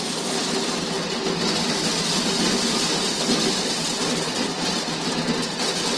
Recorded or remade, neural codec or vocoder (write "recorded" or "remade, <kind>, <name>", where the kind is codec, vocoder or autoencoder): recorded